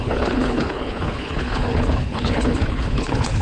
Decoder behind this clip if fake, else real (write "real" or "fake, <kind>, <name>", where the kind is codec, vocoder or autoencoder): fake, codec, HILCodec